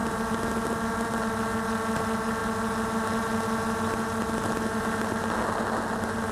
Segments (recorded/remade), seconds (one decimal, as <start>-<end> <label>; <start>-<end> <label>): 0.0-6.3 recorded